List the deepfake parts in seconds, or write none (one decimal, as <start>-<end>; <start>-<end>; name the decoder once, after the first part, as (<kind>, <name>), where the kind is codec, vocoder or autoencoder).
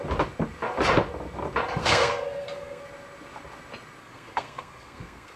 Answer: 1.8-2.8 (codec, SNAC); 4.0-5.4